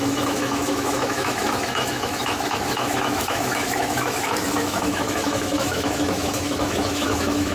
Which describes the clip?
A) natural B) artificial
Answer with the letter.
B